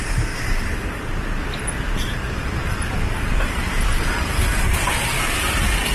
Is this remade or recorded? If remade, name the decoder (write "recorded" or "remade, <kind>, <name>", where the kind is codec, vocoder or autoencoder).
remade, vocoder, BigVGAN v2